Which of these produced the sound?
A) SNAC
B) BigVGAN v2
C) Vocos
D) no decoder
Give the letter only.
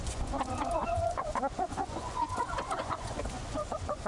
C